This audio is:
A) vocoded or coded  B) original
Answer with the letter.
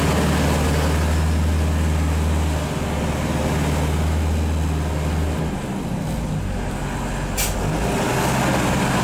B